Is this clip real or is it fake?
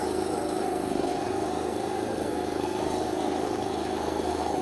fake